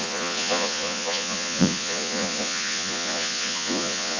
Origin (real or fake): fake